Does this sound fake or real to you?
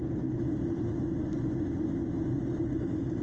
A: real